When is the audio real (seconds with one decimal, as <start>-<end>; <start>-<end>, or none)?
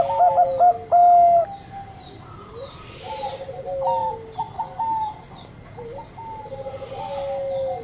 0.0-7.8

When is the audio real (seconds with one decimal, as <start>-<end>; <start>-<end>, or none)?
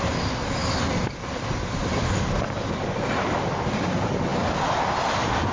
0.0-5.5